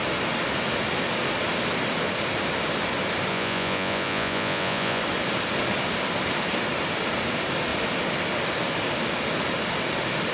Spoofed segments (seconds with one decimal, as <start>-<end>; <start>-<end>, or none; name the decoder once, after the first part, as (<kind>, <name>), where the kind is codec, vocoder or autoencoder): 3.3-5.0 (vocoder, Vocos)